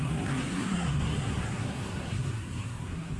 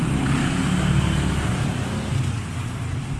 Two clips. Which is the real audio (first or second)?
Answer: second